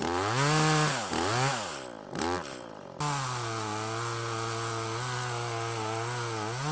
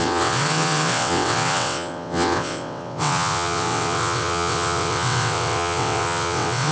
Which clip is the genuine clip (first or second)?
first